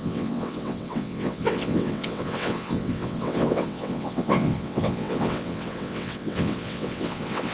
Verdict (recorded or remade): remade